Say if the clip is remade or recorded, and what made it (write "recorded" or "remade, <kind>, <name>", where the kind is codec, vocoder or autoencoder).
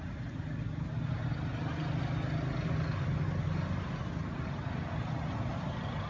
recorded